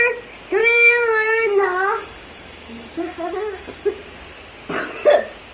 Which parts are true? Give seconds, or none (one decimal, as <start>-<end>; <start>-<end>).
0.0-0.6; 3.9-5.5